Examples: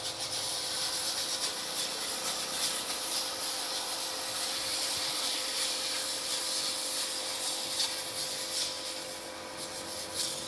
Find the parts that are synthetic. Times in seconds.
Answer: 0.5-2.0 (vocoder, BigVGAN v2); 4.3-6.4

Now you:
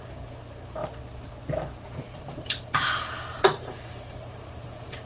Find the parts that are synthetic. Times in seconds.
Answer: 0.0-0.8 (vocoder, BigVGAN v2); 3.9-5.1

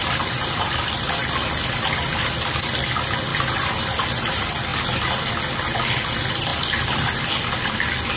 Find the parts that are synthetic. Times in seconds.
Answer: 3.3-3.8 (vocoder, BigVGAN v2)

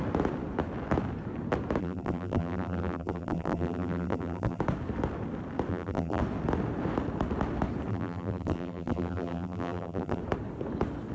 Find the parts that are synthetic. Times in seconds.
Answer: 1.8-4.6 (vocoder, BigVGAN v2); 5.7-6.2; 7.9-10.2

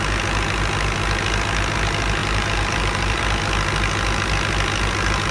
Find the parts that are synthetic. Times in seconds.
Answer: 2.2-3.2 (vocoder, BigVGAN v2)

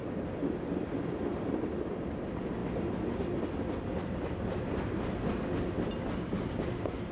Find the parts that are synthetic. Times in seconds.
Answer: 1.3-2.0 (vocoder, BigVGAN v2)

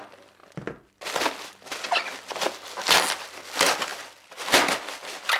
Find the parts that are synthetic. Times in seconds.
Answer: none